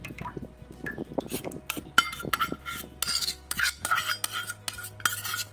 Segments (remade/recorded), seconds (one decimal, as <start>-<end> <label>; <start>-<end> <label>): 0.0-3.2 recorded; 3.2-3.8 remade; 3.8-5.5 recorded